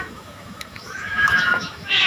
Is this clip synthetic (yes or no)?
yes